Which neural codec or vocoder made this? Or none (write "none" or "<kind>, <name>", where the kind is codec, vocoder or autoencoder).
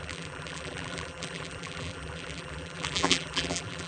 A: vocoder, BigVGAN v2